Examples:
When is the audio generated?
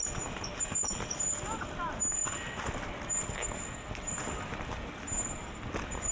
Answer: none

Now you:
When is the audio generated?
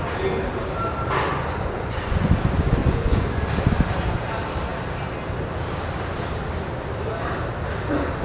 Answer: 1.3-2.3 (vocoder, Vocos); 2.8-3.4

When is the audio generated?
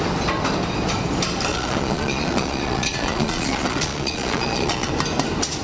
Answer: 1.5-4.9 (vocoder, Vocos)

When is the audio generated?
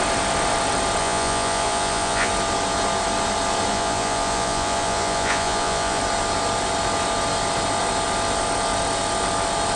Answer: 1.0-2.3 (vocoder, Vocos); 3.7-6.0